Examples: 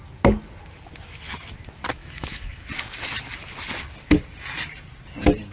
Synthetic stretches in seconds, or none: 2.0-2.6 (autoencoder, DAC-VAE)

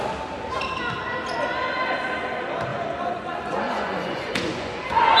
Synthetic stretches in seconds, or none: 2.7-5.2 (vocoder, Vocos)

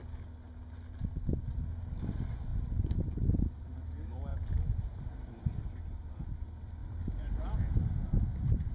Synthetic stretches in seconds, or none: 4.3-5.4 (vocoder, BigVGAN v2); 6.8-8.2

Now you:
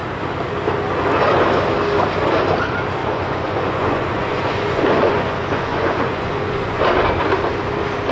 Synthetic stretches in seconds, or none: 3.0-6.8 (vocoder, Vocos)